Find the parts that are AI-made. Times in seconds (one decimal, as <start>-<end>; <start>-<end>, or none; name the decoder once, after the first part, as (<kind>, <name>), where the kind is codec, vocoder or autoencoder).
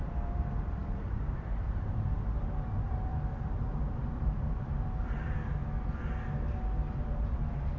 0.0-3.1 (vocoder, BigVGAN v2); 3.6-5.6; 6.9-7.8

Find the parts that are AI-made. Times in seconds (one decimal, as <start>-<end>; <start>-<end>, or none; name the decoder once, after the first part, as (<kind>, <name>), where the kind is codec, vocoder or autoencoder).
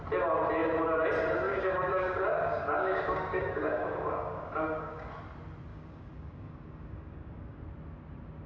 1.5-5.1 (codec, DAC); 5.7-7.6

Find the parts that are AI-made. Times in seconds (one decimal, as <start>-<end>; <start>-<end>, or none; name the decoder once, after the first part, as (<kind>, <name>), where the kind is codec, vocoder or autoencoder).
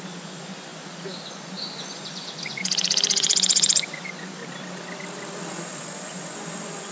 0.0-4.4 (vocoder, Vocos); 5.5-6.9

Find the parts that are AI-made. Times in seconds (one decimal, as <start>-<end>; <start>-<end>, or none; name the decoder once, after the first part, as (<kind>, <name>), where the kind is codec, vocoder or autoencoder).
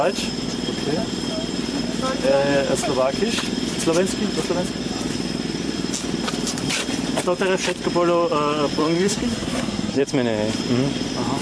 8.8-10.0 (codec, SNAC)